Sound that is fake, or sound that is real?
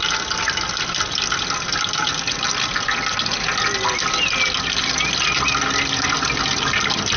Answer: real